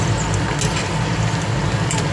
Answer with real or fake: real